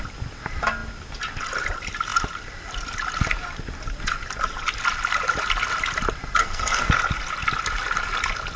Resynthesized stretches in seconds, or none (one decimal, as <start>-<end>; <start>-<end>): 6.4-6.9